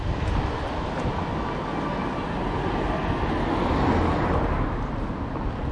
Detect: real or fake real